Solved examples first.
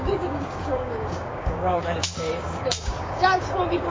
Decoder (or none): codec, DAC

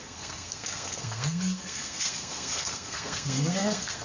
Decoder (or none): codec, SNAC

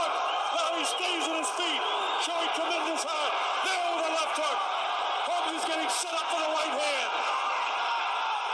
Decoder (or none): none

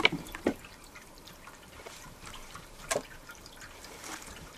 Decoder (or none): vocoder, BigVGAN v2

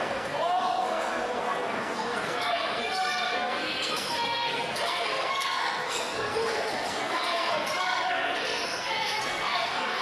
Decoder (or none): codec, SNAC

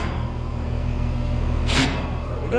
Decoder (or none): codec, SNAC